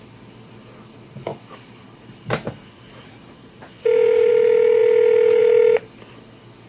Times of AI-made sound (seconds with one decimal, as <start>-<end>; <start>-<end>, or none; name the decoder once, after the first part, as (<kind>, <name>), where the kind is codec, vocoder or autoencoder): 1.3-4.3 (vocoder, BigVGAN v2)